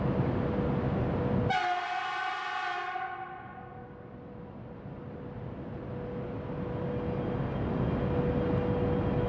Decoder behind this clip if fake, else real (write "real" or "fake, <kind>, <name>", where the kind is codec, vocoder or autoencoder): real